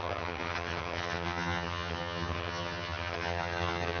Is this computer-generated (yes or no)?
yes